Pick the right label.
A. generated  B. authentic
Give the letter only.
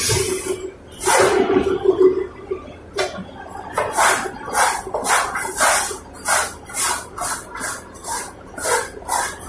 B